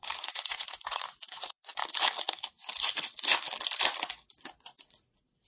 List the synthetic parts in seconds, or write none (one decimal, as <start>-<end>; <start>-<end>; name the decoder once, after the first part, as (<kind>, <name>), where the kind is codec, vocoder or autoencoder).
0.0-1.8 (vocoder, Vocos); 4.3-5.5